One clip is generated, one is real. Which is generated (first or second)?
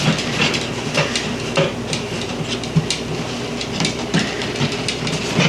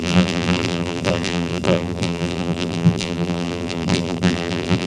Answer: second